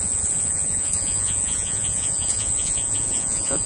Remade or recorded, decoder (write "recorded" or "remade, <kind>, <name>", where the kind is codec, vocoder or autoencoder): remade, vocoder, Vocos